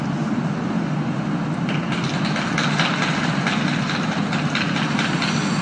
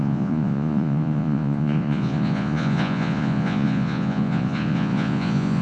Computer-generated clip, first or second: second